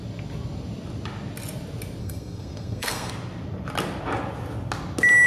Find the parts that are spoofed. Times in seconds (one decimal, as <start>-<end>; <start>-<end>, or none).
2.0-3.1